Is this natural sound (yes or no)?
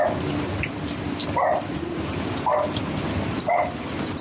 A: yes